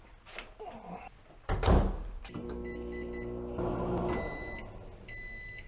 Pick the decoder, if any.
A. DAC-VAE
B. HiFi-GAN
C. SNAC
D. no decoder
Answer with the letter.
D